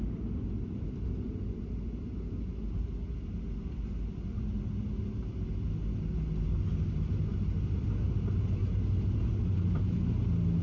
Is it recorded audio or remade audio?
recorded